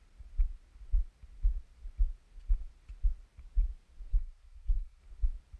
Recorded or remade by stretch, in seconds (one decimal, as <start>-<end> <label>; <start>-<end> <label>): 0.0-4.1 recorded; 4.1-5.0 remade; 5.0-5.6 recorded